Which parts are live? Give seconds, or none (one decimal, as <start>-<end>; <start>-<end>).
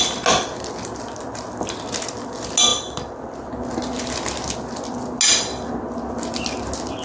0.0-7.0